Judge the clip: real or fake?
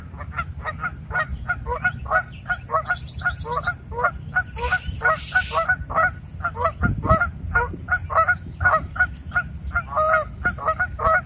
real